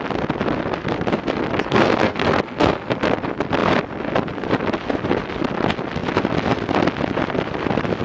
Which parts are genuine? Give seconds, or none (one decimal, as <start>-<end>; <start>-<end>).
0.0-1.6; 3.0-8.0